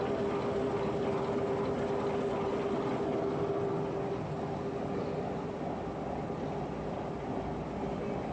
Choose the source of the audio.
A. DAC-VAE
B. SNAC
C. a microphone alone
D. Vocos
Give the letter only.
C